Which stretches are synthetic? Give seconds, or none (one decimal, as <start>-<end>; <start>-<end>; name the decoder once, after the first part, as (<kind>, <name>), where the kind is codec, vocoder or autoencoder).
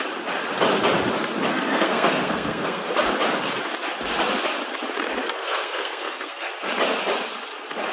1.5-2.9 (codec, SNAC); 5.2-6.5